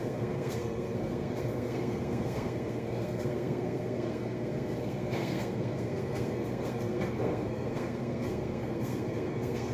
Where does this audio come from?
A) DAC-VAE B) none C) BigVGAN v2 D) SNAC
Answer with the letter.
D